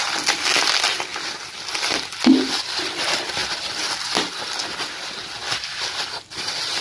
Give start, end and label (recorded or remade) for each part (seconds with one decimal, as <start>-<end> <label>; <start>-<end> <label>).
0.0-6.8 recorded